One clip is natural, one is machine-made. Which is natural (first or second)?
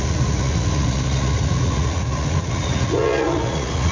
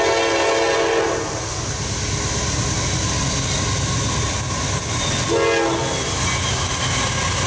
second